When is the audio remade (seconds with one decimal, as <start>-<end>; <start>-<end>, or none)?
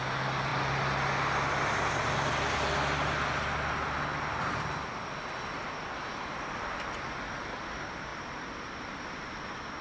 none